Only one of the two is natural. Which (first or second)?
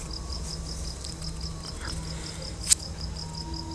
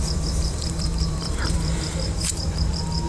first